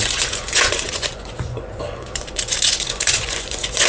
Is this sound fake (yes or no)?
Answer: yes